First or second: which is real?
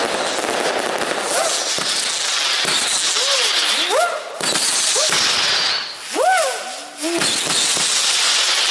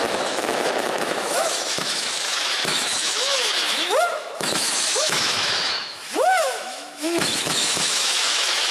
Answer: first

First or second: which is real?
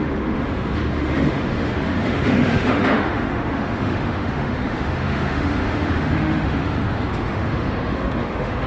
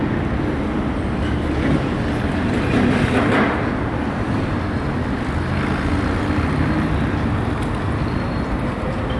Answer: second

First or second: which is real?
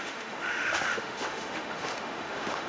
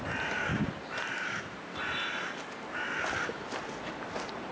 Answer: second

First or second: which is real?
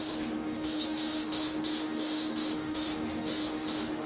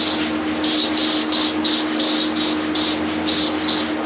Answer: second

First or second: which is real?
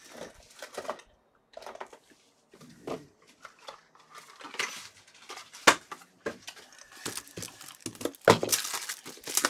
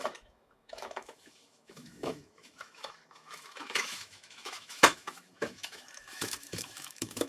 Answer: first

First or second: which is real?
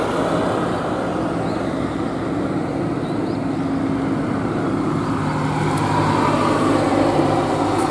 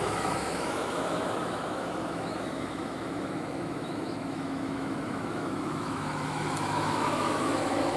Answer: first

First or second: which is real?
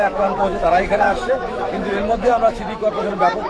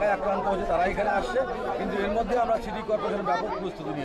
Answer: second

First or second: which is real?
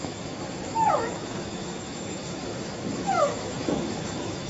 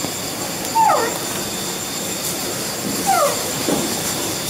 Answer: second